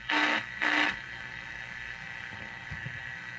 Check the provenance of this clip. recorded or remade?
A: remade